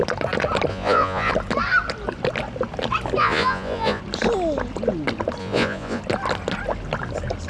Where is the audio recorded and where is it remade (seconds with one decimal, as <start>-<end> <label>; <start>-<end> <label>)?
0.0-0.7 recorded; 0.7-1.3 remade; 1.3-3.2 recorded; 3.2-4.0 remade; 4.0-5.4 recorded; 5.4-6.0 remade; 6.0-7.5 recorded

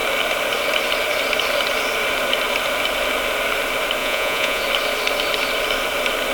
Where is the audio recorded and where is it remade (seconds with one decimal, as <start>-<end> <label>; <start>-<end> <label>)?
0.0-4.0 recorded; 4.0-4.6 remade; 4.6-6.3 recorded